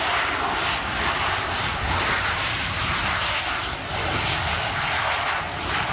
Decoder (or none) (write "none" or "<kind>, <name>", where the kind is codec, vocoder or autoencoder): none